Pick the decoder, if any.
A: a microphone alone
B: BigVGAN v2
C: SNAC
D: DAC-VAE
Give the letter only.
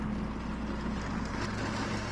A